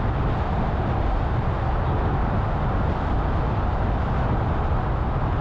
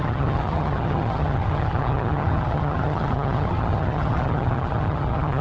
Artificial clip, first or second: second